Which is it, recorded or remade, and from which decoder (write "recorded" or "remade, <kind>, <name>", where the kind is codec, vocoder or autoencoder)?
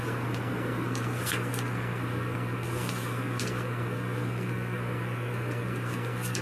remade, codec, SNAC